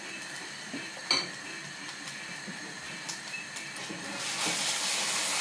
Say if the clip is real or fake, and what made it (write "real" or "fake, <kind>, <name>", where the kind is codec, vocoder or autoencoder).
real